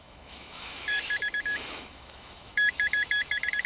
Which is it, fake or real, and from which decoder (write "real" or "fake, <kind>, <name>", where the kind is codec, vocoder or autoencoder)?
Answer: fake, autoencoder, DAC-VAE